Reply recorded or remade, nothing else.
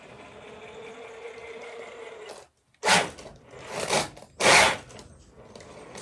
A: recorded